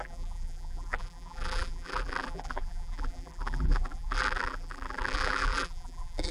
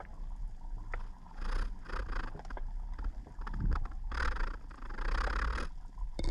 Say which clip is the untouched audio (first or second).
second